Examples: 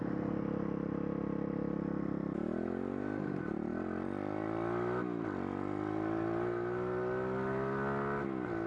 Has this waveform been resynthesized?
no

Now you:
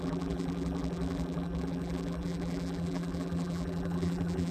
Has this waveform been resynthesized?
yes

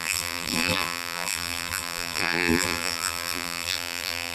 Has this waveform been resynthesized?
yes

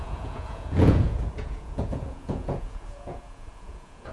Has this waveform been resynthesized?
yes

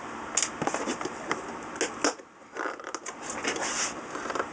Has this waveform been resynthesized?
no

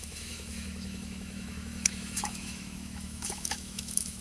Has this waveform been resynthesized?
yes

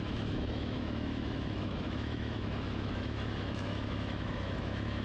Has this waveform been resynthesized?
yes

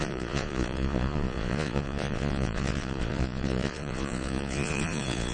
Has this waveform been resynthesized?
yes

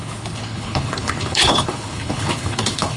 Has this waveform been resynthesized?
yes